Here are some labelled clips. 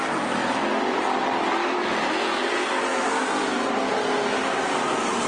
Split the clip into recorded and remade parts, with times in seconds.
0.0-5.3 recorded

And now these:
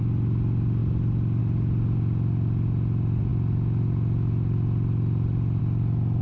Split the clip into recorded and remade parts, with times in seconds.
0.0-6.2 recorded

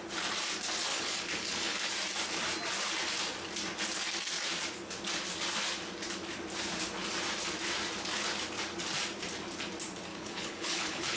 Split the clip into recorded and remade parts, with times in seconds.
0.0-0.9 recorded; 0.9-1.9 remade; 1.9-10.1 recorded; 10.1-11.2 remade

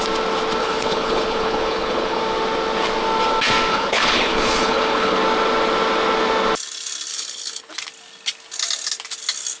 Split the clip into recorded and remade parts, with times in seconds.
0.0-0.6 recorded; 0.6-2.2 remade; 2.2-3.7 recorded; 3.7-5.2 remade; 5.2-7.1 recorded; 7.1-7.7 remade; 7.7-9.6 recorded

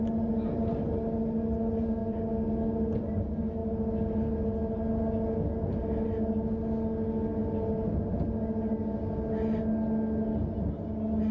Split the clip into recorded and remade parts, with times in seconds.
0.0-11.3 recorded